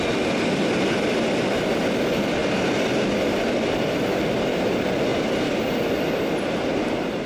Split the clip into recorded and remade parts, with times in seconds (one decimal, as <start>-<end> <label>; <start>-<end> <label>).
0.0-7.3 recorded